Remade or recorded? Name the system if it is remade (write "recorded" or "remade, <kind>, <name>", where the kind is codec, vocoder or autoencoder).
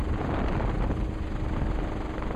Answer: recorded